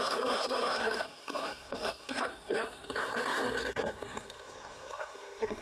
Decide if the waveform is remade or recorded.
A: remade